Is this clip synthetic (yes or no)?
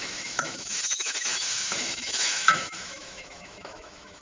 yes